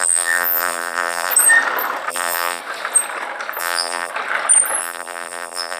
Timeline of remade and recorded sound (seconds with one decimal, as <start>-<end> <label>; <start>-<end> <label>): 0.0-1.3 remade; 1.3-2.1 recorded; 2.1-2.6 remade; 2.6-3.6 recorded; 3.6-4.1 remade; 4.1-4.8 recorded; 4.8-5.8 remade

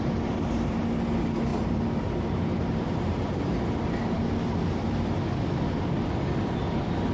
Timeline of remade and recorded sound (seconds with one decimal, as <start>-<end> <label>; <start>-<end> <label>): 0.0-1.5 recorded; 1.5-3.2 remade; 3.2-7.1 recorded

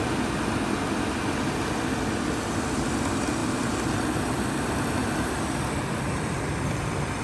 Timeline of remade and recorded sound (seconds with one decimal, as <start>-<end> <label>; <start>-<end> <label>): 0.0-3.4 recorded; 3.4-4.5 remade; 4.5-5.0 recorded; 5.0-6.2 remade; 6.2-7.2 recorded

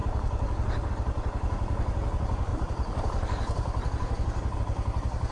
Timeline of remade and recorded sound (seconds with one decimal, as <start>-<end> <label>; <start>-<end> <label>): 0.0-0.9 remade; 0.9-2.5 recorded; 2.5-4.6 remade; 4.6-5.3 recorded

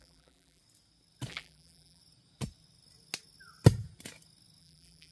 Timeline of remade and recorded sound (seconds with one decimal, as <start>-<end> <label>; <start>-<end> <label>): 0.0-0.6 remade; 0.6-1.3 recorded; 1.3-2.0 remade; 2.0-4.6 recorded; 4.6-5.1 remade